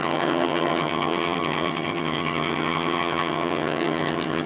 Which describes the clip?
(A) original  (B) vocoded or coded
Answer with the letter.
B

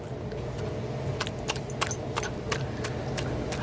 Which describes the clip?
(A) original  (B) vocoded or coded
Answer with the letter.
A